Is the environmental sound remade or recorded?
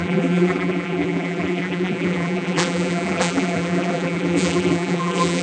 remade